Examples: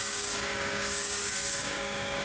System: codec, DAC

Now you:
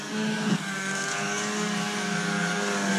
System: codec, DAC